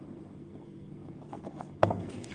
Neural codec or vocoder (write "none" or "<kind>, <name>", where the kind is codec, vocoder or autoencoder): codec, SNAC